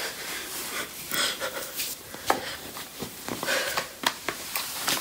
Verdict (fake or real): fake